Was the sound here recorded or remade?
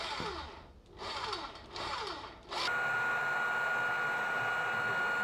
recorded